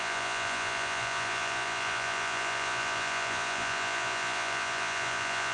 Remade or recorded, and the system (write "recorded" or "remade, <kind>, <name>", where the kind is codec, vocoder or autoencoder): remade, vocoder, Vocos